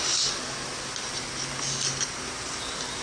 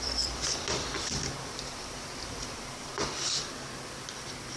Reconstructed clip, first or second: second